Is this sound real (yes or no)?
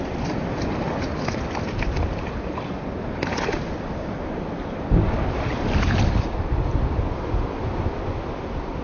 no